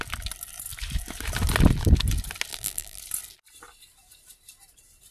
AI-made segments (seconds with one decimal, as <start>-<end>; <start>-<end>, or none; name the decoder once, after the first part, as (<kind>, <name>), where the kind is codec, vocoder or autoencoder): 2.5-3.0 (vocoder, BigVGAN v2)